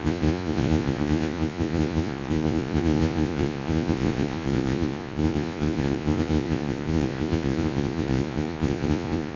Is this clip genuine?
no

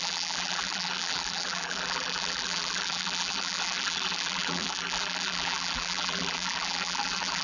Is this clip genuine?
no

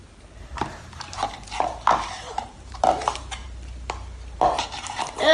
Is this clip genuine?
no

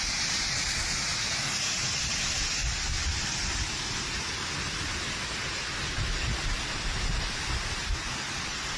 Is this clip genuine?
yes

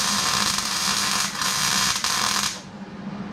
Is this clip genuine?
no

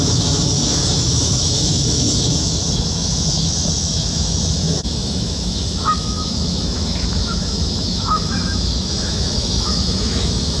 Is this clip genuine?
no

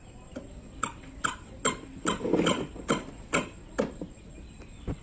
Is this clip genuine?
yes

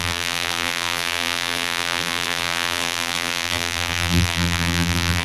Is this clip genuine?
no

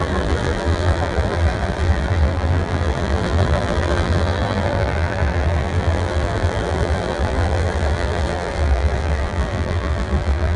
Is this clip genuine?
no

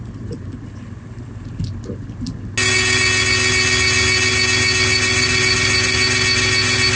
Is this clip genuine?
yes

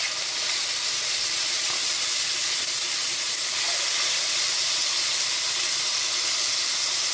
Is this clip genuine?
yes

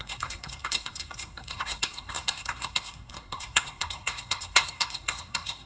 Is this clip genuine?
no